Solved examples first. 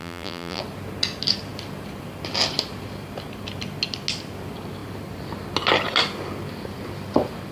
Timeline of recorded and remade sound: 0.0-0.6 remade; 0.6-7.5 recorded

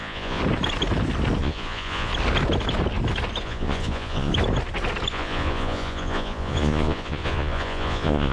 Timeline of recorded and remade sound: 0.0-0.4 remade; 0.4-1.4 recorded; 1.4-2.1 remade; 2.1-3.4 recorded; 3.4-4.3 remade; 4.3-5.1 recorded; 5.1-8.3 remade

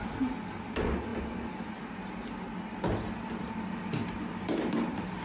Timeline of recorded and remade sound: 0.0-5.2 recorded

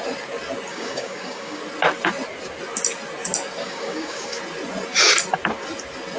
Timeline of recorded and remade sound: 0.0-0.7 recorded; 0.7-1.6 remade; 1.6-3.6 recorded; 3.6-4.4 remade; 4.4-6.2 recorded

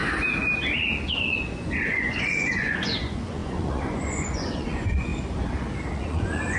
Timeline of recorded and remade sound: 0.0-0.9 recorded; 0.9-5.1 remade; 5.1-5.9 recorded; 5.9-6.6 remade

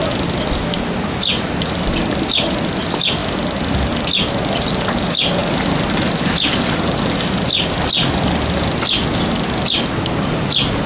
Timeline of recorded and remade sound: 0.0-10.9 recorded

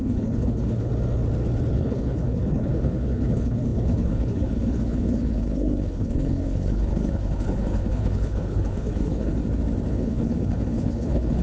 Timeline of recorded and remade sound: 0.0-0.9 remade; 0.9-1.7 recorded; 1.7-9.3 remade; 9.3-9.9 recorded; 9.9-11.4 remade